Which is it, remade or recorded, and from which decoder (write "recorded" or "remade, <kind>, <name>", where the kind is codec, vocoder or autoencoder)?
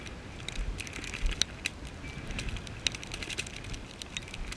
recorded